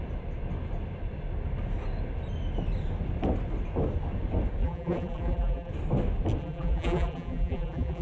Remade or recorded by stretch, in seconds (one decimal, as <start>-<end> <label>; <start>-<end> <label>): 0.0-4.6 recorded; 4.6-5.7 remade; 5.7-6.4 recorded; 6.4-8.0 remade